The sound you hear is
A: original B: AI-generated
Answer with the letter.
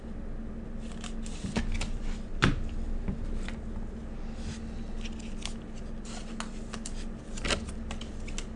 A